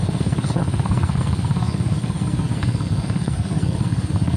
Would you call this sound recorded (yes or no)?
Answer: no